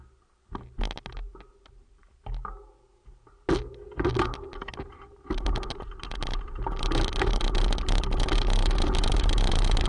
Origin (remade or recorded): recorded